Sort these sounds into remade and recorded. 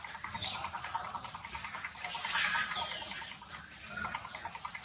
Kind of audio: recorded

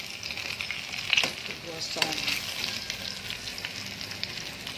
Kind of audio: recorded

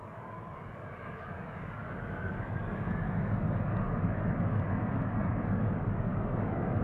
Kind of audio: remade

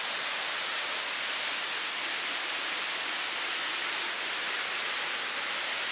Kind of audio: recorded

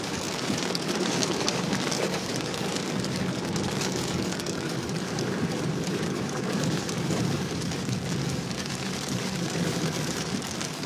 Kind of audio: remade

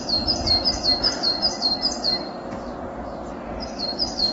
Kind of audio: recorded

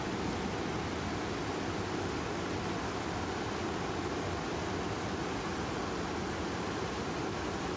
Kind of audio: recorded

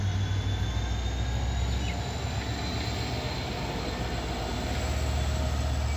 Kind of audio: recorded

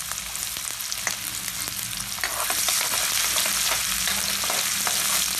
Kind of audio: recorded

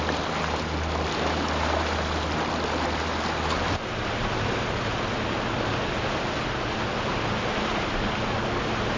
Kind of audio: recorded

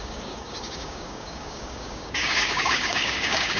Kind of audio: remade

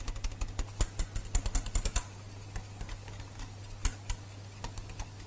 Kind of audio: recorded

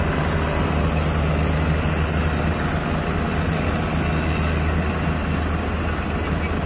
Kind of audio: recorded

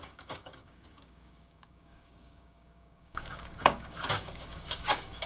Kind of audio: remade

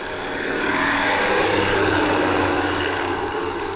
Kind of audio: remade